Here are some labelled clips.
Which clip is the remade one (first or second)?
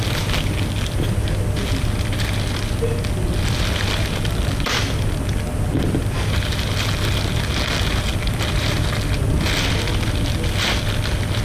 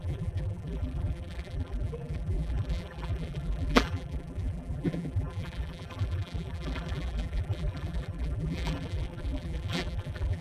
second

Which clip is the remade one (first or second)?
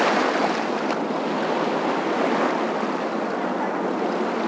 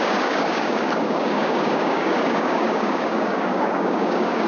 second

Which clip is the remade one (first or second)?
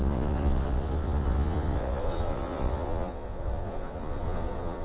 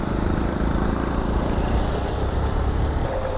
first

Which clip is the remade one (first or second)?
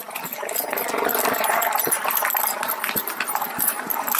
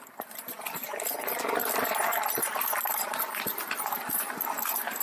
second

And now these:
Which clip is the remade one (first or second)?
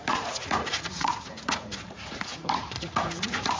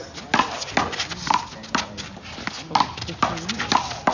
first